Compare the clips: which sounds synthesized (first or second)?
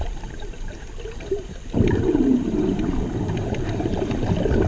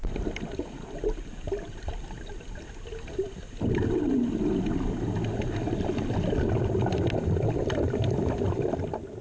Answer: first